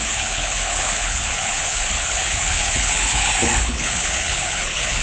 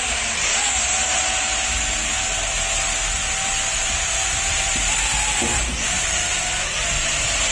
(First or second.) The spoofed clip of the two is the first